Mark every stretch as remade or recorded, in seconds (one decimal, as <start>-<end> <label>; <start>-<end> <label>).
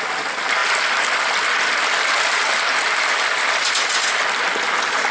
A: 0.0-5.1 recorded